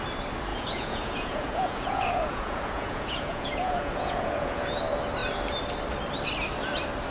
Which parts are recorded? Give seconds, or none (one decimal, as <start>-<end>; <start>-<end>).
0.0-0.5; 4.8-7.1